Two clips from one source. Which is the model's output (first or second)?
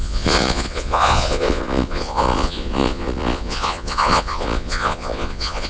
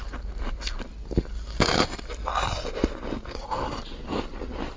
first